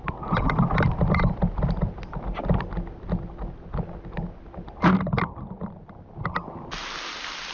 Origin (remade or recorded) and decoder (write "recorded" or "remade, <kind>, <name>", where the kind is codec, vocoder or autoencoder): recorded